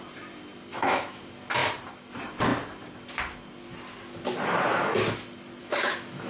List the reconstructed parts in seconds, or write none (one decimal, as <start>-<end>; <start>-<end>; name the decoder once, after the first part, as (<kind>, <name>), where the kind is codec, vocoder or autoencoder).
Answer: 0.7-1.2 (autoencoder, DAC-VAE); 5.6-6.3